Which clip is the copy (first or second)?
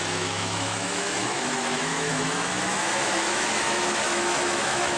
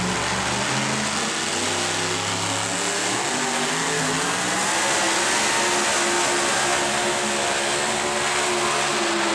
first